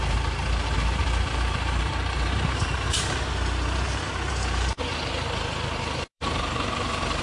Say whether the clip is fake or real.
fake